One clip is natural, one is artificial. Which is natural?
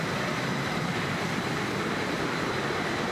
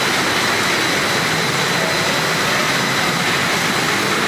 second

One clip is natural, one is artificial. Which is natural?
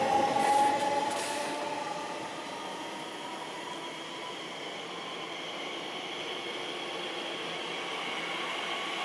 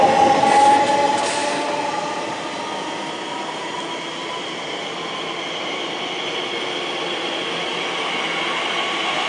second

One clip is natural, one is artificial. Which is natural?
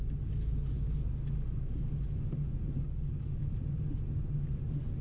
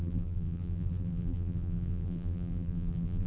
first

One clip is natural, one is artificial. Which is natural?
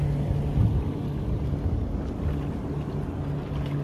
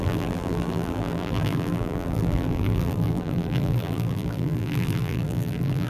first